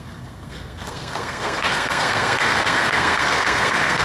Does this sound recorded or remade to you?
remade